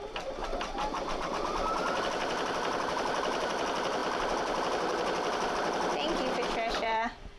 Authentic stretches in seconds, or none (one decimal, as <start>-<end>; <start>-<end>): 0.4-2.0; 5.9-6.7